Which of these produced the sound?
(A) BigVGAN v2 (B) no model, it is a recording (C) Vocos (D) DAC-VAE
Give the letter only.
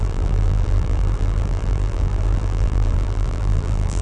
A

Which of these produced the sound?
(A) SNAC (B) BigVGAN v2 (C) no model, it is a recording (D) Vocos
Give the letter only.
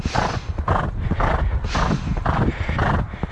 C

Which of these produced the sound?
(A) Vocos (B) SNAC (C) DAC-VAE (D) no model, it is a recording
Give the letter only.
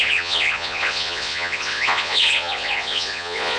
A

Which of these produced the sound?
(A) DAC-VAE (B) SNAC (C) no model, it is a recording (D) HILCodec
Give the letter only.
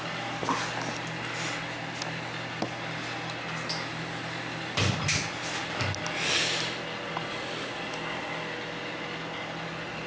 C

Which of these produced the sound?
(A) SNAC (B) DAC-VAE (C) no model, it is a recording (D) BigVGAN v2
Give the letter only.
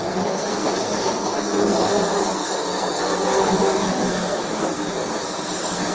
A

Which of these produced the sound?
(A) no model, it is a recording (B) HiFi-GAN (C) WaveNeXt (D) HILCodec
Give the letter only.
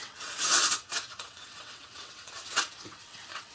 C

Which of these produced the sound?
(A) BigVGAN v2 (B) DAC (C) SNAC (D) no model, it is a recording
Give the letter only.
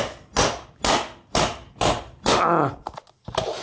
D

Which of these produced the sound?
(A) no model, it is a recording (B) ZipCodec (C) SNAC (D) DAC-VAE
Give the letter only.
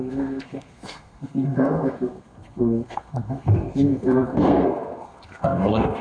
C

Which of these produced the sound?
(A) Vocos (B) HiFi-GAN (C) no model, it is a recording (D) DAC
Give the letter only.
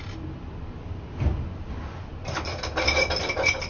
C